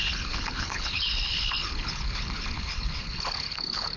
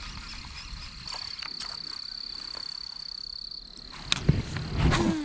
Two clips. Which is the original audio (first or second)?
second